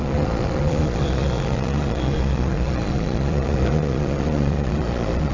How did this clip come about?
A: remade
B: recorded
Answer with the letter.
A